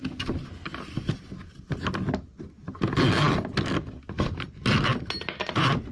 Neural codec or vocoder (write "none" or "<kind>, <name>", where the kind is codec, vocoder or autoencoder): none